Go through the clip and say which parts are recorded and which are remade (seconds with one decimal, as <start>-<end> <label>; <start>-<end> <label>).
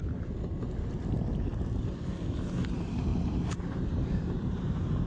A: 0.0-3.1 recorded; 3.1-5.1 remade